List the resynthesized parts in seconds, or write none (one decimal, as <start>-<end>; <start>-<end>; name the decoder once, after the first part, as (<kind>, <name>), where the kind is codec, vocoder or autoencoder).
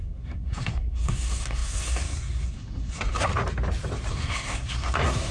0.0-3.3 (codec, SNAC); 4.1-5.3